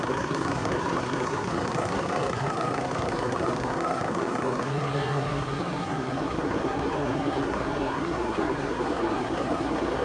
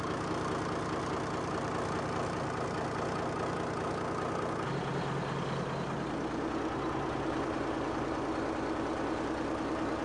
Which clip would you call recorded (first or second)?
second